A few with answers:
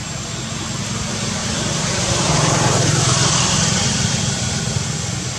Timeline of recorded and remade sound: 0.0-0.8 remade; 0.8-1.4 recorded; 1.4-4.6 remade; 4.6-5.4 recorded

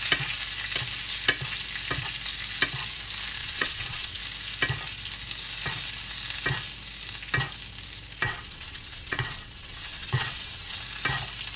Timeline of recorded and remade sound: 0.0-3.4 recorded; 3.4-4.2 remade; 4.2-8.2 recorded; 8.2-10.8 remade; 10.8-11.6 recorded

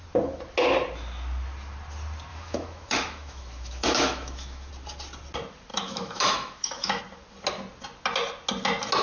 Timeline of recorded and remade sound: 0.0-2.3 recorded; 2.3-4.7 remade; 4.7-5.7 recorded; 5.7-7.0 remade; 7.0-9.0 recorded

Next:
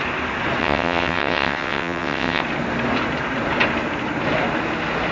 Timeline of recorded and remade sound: 0.0-0.6 recorded; 0.6-2.4 remade; 2.4-5.1 recorded

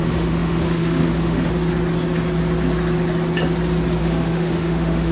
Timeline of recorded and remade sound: 0.0-1.5 remade; 1.5-4.0 recorded; 4.0-5.1 remade

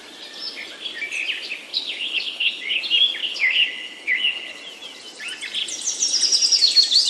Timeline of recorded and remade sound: 0.0-1.7 recorded; 1.7-2.8 remade; 2.8-3.2 recorded; 3.2-4.6 remade; 4.6-7.1 recorded